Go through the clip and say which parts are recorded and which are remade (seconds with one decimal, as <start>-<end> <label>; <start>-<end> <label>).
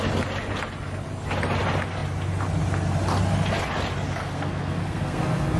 0.0-4.2 recorded; 4.2-5.6 remade